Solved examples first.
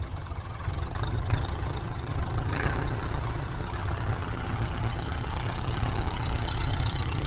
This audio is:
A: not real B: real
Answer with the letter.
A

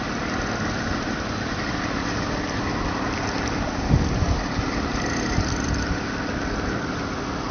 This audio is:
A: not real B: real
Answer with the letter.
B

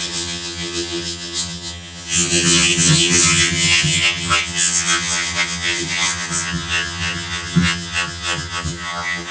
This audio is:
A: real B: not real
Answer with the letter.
B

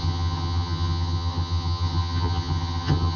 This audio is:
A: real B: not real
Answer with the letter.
B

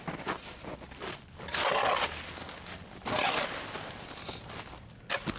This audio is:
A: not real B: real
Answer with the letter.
B